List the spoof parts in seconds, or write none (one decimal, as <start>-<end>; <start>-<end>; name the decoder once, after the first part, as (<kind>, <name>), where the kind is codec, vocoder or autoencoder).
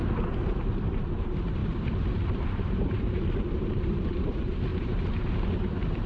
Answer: 0.8-6.1 (vocoder, BigVGAN v2)